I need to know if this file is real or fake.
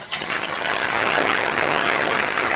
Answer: fake